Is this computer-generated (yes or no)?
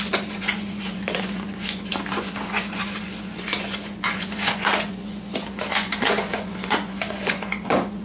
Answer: yes